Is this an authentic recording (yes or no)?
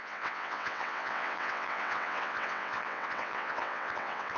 no